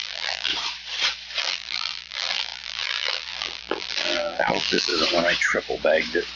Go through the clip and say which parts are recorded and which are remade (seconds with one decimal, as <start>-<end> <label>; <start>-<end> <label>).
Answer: 0.0-0.5 remade; 0.5-1.4 recorded; 1.4-4.9 remade; 4.9-6.4 recorded